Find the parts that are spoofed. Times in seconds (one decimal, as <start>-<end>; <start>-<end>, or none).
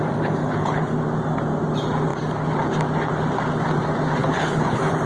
0.4-1.0; 4.2-5.1